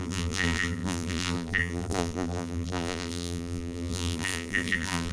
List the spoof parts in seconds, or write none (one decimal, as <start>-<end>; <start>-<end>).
0.0-5.1